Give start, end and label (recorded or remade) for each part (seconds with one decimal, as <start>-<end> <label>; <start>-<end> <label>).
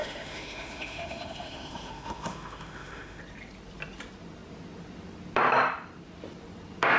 0.0-3.2 remade; 3.2-7.0 recorded